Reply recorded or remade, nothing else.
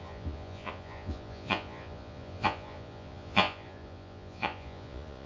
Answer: remade